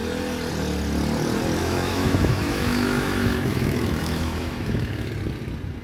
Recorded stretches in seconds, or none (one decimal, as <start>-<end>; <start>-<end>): 0.0-1.6; 5.1-5.8

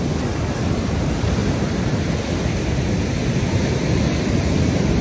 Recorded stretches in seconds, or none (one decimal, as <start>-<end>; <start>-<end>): 0.0-5.0